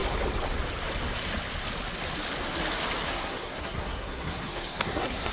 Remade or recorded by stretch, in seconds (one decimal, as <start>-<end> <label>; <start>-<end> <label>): 0.0-3.1 recorded; 3.1-5.3 remade